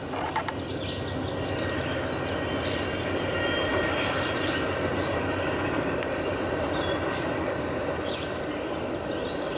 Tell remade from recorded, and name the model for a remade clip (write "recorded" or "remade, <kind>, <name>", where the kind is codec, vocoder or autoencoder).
recorded